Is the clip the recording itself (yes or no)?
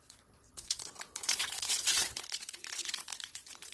no